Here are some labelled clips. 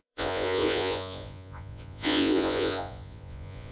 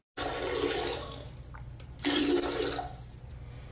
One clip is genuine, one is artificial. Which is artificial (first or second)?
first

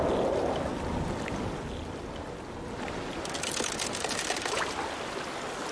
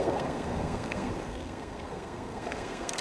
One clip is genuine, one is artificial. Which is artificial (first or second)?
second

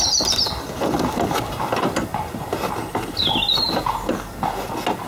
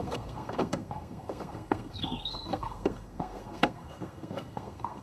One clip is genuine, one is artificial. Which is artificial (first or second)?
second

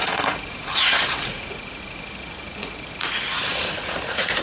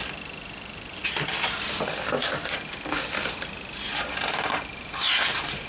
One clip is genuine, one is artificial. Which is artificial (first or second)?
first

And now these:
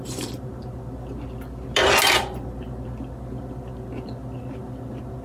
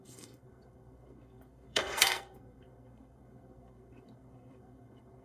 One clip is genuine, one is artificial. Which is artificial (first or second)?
second